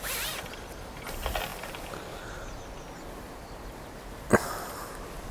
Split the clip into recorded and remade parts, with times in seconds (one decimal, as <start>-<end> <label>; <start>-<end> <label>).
0.0-5.3 recorded

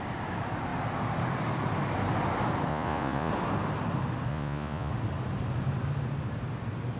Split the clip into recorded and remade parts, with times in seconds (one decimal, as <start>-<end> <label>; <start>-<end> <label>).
0.0-2.7 recorded; 2.7-3.3 remade; 3.3-4.3 recorded; 4.3-4.9 remade; 4.9-7.0 recorded

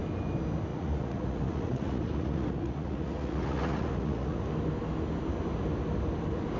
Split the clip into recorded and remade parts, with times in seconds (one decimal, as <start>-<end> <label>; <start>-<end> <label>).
0.0-0.7 recorded; 0.7-4.4 remade; 4.4-6.6 recorded

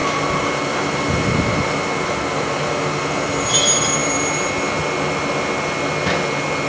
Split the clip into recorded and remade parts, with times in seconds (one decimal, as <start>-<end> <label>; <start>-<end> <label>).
0.0-6.7 recorded

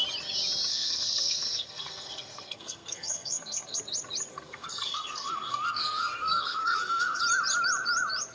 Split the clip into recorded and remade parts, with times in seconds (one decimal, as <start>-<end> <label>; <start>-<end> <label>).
0.0-0.7 recorded; 0.7-3.8 remade; 3.8-4.3 recorded; 4.3-7.2 remade; 7.2-8.3 recorded

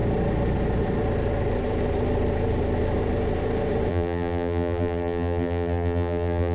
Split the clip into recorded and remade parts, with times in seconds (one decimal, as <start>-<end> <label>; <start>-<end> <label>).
0.0-3.9 recorded; 3.9-6.5 remade

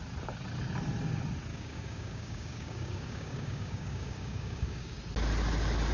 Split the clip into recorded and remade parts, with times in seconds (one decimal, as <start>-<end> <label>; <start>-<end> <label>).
0.0-1.5 recorded; 1.5-5.0 remade; 5.0-5.9 recorded

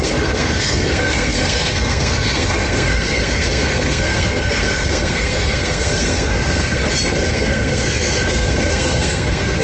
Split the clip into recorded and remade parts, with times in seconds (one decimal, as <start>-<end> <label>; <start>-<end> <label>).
0.0-6.8 remade; 6.8-7.3 recorded; 7.3-9.6 remade